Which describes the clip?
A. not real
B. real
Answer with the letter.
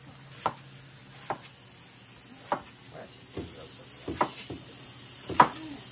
B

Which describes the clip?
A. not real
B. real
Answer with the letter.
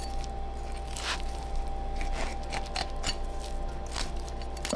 B